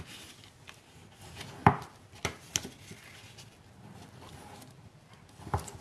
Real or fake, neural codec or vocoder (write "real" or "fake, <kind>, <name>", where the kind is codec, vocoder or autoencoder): real